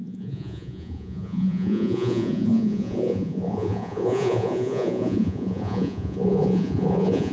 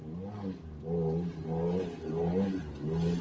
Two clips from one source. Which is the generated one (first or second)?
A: first